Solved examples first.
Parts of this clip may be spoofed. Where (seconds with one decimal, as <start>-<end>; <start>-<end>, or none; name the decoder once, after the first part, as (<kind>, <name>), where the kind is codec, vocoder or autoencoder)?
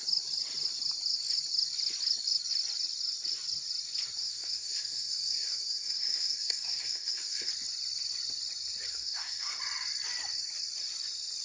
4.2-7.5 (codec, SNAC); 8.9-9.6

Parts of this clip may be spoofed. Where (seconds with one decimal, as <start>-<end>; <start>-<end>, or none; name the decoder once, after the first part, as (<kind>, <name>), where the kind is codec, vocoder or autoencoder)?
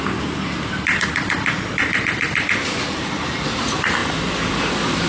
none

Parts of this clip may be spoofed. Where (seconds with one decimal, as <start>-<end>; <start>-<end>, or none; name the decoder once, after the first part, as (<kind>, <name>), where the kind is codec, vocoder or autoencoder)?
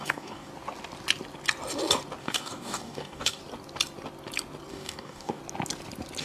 0.0-0.5 (codec, DAC); 2.2-3.4; 4.7-5.4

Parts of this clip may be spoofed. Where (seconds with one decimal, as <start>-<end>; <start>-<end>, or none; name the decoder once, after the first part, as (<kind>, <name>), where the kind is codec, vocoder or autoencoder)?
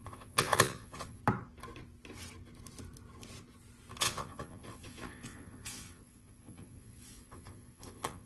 0.0-1.2 (vocoder, Vocos); 4.0-8.3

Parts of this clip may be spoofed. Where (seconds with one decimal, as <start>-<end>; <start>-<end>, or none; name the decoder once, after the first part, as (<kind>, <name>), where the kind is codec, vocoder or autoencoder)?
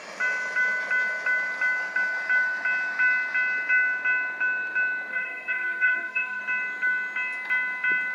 5.1-6.4 (codec, SNAC)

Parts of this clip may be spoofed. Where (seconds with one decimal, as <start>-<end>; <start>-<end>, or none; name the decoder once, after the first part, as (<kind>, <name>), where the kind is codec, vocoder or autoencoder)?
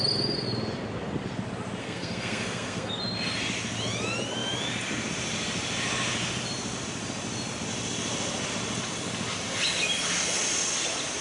1.8-2.9 (codec, SNAC)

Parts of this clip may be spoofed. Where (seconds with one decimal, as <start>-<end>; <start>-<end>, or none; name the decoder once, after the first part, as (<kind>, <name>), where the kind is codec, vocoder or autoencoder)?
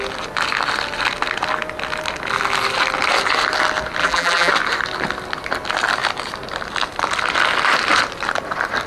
4.0-4.5 (vocoder, BigVGAN v2)